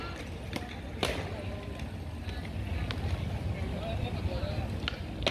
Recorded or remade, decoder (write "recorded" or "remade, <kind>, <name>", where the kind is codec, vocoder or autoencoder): recorded